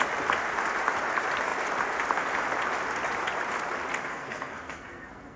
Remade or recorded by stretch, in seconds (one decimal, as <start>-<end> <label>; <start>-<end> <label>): 0.0-4.1 recorded; 4.1-5.4 remade

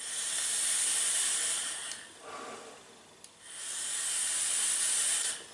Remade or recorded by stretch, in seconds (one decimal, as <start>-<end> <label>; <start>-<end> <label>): 0.0-1.8 recorded; 1.8-3.7 remade; 3.7-5.5 recorded

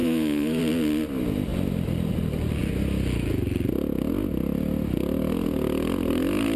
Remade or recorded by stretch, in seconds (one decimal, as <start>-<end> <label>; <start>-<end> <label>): 0.0-0.6 remade; 0.6-6.6 recorded

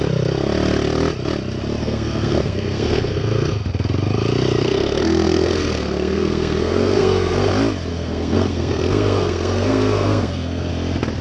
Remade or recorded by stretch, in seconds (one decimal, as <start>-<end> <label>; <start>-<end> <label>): 0.0-1.8 recorded; 1.8-3.7 remade; 3.7-4.6 recorded; 4.6-7.5 remade; 7.5-7.9 recorded; 7.9-10.7 remade; 10.7-11.2 recorded

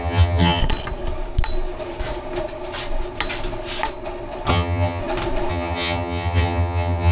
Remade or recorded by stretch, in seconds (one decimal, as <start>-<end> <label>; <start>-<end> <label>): 0.0-0.6 remade; 0.6-4.5 recorded; 4.5-5.0 remade; 5.0-5.5 recorded; 5.5-7.1 remade

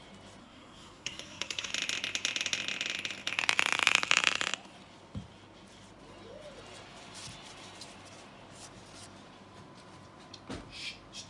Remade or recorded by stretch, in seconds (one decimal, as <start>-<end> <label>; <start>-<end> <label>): 0.0-0.4 recorded; 0.4-1.7 remade; 1.7-11.3 recorded